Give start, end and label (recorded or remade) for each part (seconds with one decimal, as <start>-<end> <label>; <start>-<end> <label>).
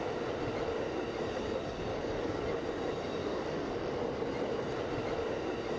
0.0-1.9 recorded; 1.9-2.5 remade; 2.5-3.2 recorded; 3.2-3.9 remade; 3.9-5.8 recorded